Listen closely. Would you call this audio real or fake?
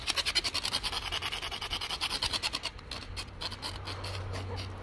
real